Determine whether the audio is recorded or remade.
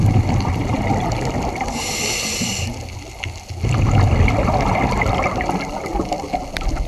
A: recorded